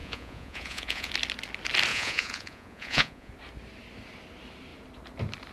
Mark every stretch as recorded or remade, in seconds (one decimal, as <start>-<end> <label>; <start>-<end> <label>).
0.0-1.1 remade; 1.1-1.9 recorded; 1.9-3.3 remade; 3.3-5.5 recorded